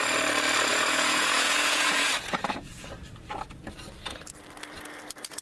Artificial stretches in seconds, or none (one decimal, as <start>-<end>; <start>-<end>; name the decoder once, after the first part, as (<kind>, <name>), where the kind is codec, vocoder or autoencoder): 0.7-2.9 (vocoder, Vocos)